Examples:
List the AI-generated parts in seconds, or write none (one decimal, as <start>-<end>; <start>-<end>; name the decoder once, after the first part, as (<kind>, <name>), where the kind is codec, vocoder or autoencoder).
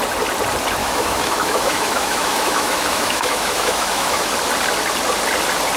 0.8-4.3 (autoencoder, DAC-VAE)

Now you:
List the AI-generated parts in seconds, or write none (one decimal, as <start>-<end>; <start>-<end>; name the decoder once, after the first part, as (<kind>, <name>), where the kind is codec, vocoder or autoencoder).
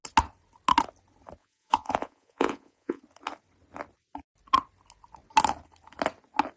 1.4-3.0 (vocoder, Vocos)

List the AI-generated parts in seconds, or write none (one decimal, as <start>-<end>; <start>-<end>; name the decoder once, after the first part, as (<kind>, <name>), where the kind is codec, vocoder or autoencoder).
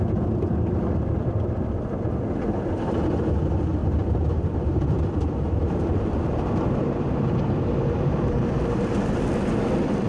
3.8-8.9 (vocoder, BigVGAN v2)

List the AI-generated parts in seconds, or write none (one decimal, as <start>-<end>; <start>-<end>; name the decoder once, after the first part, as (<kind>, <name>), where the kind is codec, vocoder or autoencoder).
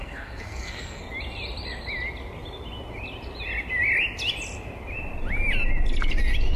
0.0-1.0 (codec, SNAC)